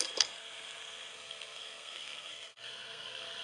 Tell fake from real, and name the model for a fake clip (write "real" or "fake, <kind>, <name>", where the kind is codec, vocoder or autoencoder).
fake, codec, SNAC